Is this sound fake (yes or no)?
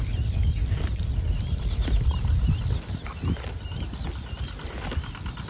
yes